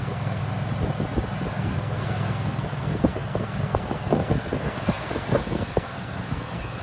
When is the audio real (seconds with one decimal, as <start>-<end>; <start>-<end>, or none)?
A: 0.4-1.6